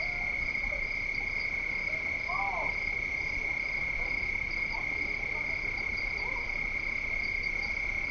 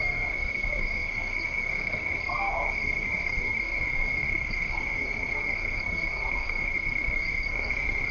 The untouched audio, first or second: first